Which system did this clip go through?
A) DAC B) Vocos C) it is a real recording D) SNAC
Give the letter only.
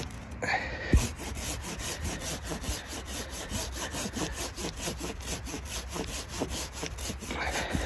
C